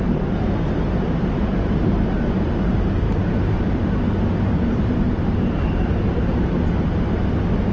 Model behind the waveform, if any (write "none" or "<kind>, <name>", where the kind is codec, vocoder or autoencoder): vocoder, BigVGAN v2